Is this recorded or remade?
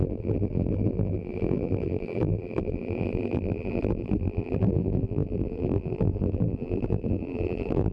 remade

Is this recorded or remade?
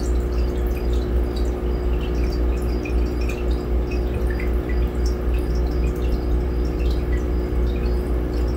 recorded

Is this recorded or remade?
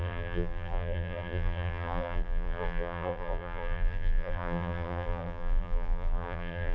remade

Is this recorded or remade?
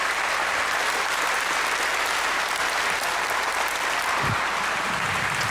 recorded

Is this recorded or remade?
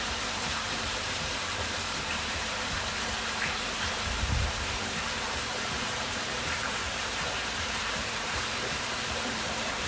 remade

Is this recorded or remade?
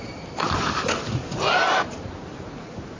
remade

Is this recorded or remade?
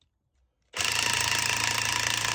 recorded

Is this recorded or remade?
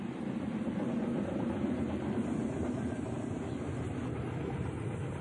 remade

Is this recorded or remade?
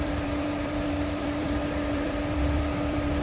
remade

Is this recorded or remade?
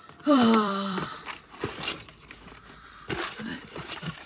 remade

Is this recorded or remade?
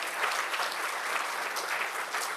recorded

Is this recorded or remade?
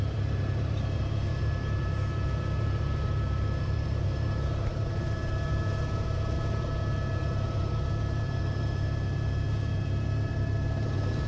remade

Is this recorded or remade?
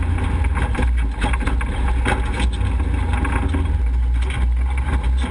recorded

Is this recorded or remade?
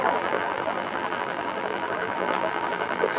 remade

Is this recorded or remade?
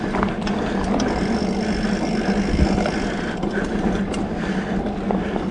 recorded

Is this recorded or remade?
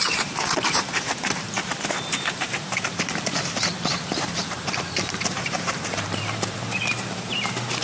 remade